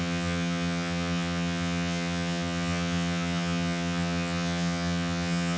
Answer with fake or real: fake